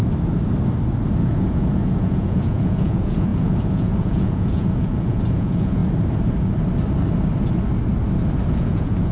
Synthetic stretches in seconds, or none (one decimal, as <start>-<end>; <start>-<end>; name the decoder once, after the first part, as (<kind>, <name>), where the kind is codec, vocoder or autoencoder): 1.2-5.8 (vocoder, Vocos); 8.5-9.1